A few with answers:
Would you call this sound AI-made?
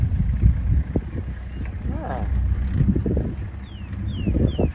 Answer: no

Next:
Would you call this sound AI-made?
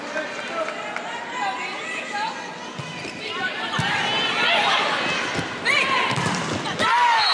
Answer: no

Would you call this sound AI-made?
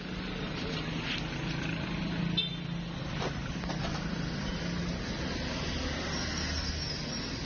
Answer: no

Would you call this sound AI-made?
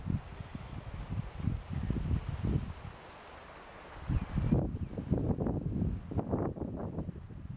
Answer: no